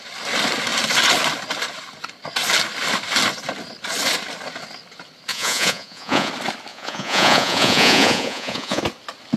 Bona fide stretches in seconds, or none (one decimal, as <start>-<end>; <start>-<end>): 0.0-5.3; 6.3-6.7; 8.8-9.4